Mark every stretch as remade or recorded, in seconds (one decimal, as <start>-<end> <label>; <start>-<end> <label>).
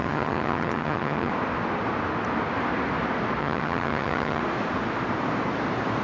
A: 0.0-1.3 remade; 1.3-3.4 recorded; 3.4-4.4 remade; 4.4-6.0 recorded